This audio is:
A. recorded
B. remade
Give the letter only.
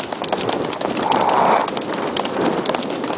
A